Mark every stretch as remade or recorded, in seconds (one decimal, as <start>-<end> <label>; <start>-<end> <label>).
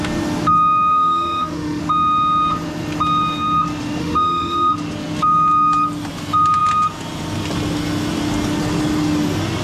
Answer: 0.0-0.9 recorded; 0.9-1.8 remade; 1.8-4.0 recorded; 4.0-4.7 remade; 4.7-9.6 recorded